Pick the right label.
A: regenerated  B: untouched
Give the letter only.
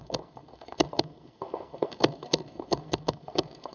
A